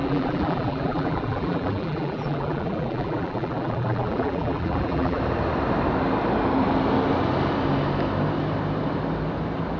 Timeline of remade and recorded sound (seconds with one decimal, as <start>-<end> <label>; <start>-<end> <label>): 0.0-5.2 remade; 5.2-9.8 recorded